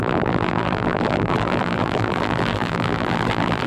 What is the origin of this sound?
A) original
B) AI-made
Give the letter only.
B